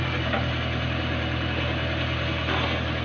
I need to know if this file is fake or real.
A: real